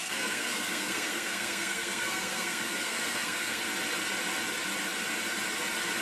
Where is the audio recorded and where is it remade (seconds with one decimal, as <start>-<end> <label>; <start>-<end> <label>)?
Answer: 0.0-3.6 remade; 3.6-6.0 recorded